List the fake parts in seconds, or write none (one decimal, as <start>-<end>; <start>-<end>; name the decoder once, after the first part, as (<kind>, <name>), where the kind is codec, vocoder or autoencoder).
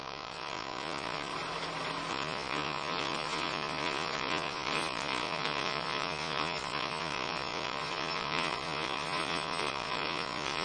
0.0-1.3 (vocoder, Vocos); 2.1-10.6